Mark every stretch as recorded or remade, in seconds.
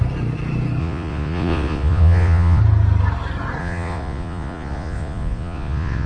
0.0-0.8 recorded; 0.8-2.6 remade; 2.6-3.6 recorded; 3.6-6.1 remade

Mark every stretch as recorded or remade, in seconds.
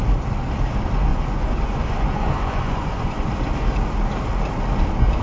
0.0-1.1 recorded; 1.1-3.3 remade; 3.3-5.2 recorded